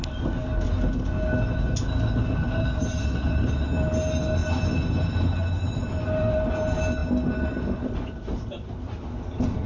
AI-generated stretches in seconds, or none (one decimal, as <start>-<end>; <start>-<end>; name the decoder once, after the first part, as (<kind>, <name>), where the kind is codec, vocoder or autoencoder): none